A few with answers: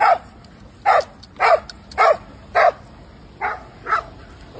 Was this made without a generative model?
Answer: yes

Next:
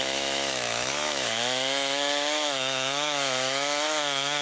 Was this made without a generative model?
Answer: no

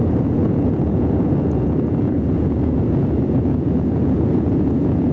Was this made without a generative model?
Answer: no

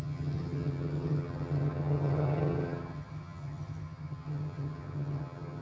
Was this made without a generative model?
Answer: no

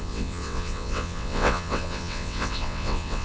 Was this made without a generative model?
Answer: no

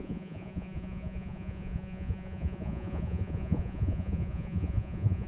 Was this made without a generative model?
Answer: no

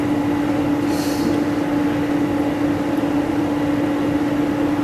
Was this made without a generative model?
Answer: yes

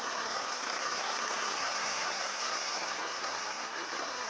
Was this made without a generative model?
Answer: no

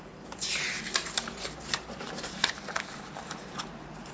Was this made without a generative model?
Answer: no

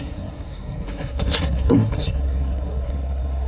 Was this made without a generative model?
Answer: no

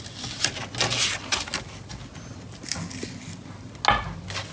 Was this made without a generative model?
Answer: yes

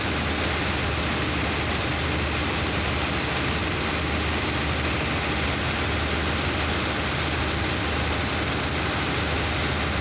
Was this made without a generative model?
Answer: yes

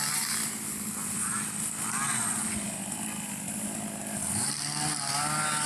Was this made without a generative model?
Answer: yes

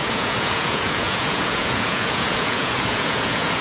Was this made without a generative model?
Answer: no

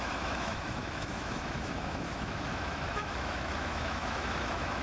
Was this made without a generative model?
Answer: no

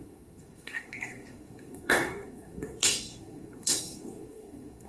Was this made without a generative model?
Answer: no